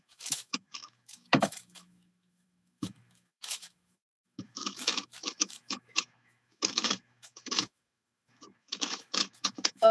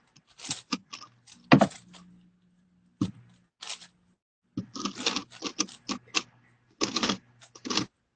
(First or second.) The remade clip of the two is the first